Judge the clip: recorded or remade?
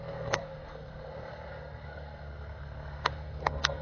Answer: remade